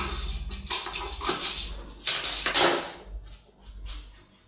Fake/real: real